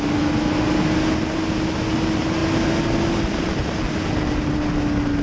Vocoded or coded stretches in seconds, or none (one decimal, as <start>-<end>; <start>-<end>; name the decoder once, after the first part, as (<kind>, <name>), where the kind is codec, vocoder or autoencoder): none